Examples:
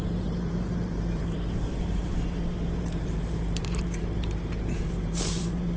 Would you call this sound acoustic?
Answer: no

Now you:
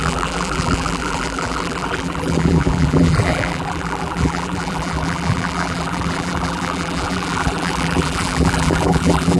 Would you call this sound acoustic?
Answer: no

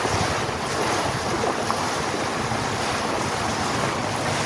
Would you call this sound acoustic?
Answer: yes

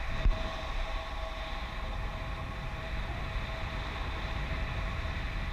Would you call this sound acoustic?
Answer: yes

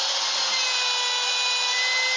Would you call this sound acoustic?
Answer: yes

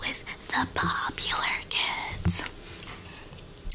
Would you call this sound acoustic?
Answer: no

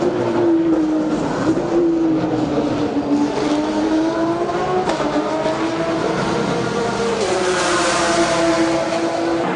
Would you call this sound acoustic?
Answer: no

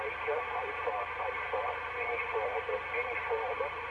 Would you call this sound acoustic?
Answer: no